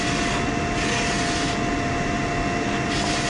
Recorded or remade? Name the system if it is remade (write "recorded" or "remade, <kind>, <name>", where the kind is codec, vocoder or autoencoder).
recorded